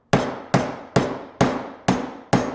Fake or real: real